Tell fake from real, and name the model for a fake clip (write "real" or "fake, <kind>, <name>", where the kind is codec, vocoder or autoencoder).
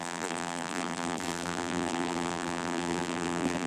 fake, vocoder, BigVGAN v2